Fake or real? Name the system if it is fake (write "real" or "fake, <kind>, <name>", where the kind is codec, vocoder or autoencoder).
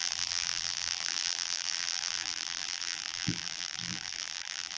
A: fake, vocoder, BigVGAN v2